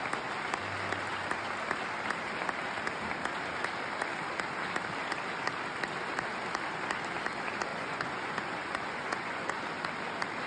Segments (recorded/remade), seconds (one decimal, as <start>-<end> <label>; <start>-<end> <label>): 0.0-7.7 recorded; 7.7-9.6 remade; 9.6-10.5 recorded